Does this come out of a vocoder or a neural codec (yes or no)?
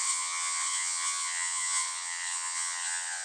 yes